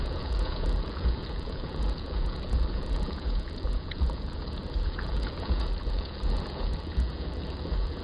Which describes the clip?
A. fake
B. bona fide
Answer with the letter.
A